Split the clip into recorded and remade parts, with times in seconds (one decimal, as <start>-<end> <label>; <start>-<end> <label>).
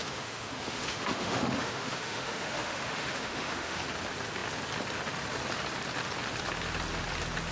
0.0-3.8 remade; 3.8-7.5 recorded